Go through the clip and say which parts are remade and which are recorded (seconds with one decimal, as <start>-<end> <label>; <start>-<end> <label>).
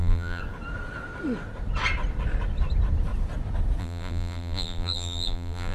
0.0-0.4 remade; 0.4-3.8 recorded; 3.8-5.7 remade